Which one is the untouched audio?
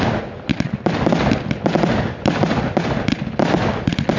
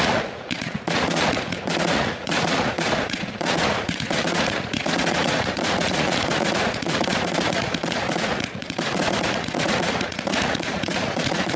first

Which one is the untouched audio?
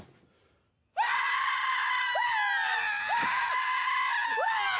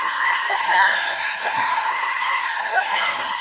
first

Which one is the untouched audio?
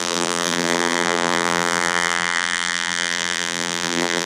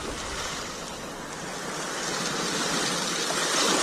second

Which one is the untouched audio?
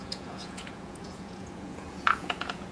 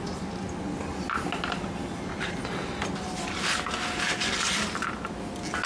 second